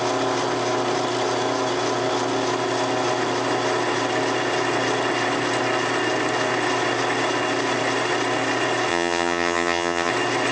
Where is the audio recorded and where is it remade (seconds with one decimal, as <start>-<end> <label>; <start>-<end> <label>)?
0.0-8.9 recorded; 8.9-10.1 remade; 10.1-10.5 recorded